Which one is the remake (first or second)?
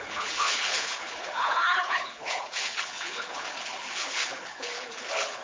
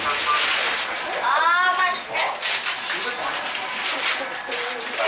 first